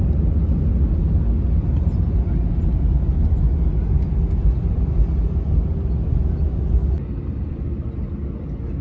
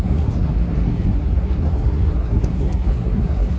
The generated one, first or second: second